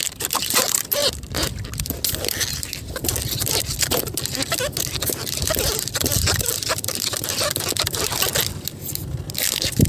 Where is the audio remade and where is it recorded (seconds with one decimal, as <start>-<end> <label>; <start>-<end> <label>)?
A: 0.0-9.9 recorded